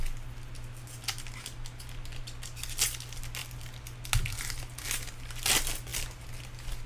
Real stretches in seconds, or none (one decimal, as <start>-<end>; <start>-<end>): 0.0-6.9